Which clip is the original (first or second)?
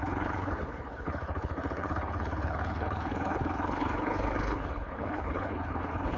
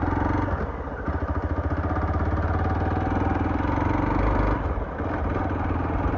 second